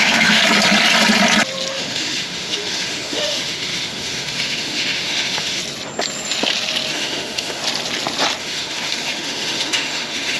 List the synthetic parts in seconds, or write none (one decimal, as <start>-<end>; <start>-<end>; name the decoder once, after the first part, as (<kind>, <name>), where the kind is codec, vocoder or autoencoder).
0.0-0.4 (autoencoder, DAC-VAE); 1.7-5.6; 6.9-7.6; 8.4-10.4